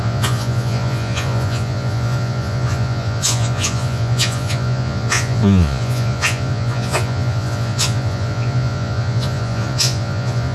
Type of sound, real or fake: fake